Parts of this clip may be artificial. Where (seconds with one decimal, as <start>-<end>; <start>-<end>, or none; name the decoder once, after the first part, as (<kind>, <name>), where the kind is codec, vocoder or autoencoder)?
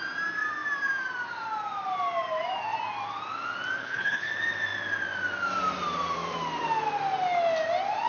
3.8-4.3 (codec, HILCodec)